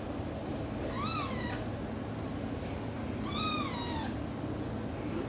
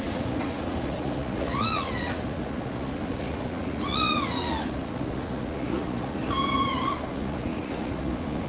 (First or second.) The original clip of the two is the first